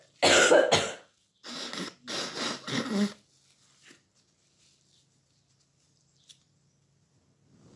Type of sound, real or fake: real